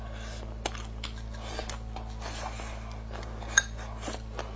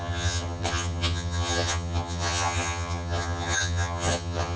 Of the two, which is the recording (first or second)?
first